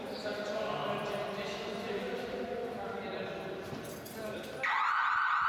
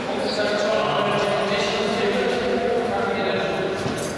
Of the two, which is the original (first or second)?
second